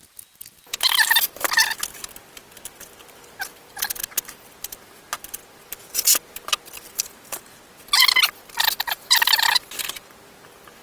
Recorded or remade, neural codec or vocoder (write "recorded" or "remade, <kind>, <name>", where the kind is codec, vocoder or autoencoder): recorded